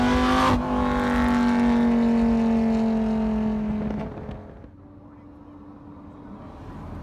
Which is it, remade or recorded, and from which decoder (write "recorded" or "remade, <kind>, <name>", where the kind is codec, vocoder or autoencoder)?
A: recorded